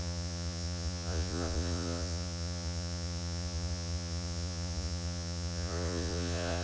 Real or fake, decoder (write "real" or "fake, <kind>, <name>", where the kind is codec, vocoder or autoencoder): fake, vocoder, Vocos